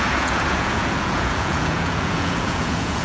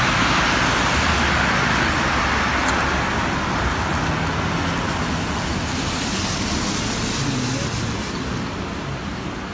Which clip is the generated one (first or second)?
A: first